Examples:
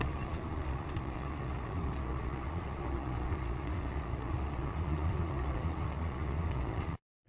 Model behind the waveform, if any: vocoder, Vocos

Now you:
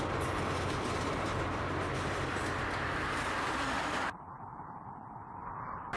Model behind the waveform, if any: none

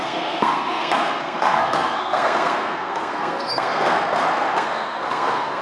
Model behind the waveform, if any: codec, SNAC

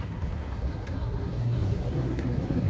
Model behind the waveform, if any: codec, SNAC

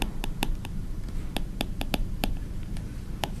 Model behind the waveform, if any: vocoder, BigVGAN v2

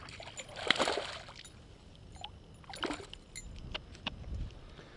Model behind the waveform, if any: none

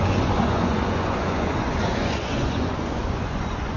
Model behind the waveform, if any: vocoder, Vocos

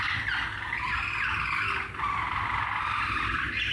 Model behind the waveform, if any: none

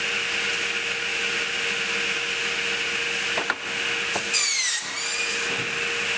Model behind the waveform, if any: none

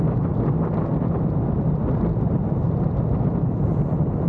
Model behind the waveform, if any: none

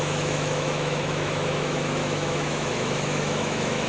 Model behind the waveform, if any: autoencoder, DAC-VAE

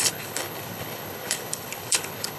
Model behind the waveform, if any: codec, HILCodec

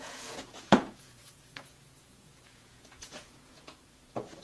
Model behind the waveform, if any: vocoder, Vocos